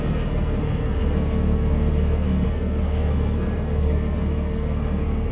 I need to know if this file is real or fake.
fake